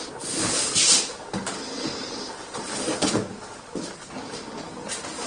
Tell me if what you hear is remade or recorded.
recorded